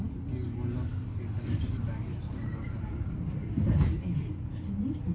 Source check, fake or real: real